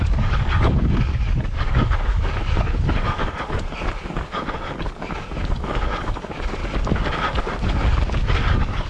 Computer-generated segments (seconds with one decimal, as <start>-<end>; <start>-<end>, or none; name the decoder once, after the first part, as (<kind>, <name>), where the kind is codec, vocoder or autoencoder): 0.0-6.6 (codec, DAC); 7.4-8.9